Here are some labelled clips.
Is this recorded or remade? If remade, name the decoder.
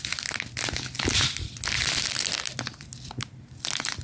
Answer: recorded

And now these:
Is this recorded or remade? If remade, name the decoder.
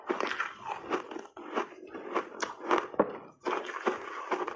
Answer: recorded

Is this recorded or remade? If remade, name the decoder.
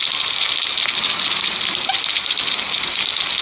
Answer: recorded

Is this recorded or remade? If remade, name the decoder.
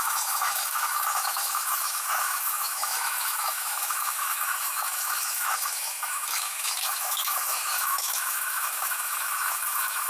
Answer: remade, autoencoder, DAC-VAE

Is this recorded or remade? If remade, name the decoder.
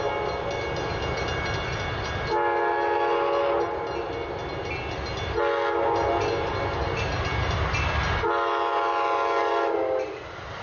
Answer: recorded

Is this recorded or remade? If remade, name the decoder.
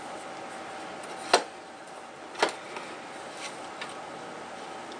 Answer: recorded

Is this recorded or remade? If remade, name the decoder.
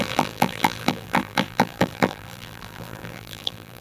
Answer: remade, vocoder, BigVGAN v2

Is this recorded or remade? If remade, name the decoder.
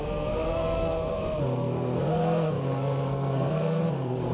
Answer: remade, codec, SNAC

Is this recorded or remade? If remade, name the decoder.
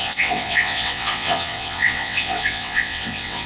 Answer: remade, vocoder, WaveNeXt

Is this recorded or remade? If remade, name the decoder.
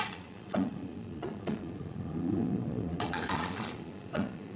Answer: remade, vocoder, Vocos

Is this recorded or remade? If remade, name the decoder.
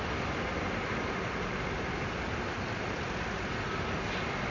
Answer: recorded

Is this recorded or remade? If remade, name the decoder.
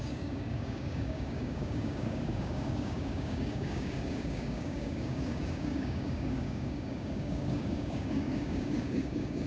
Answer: remade, codec, DAC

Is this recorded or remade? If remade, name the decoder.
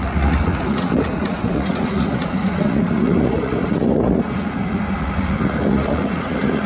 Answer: remade, vocoder, Vocos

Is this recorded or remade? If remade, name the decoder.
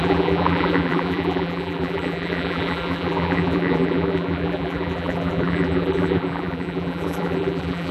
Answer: remade, vocoder, BigVGAN v2